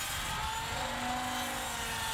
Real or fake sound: real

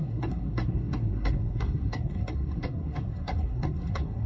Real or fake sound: fake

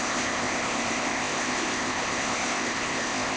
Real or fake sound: fake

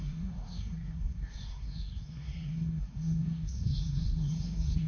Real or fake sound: fake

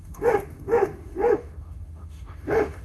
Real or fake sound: fake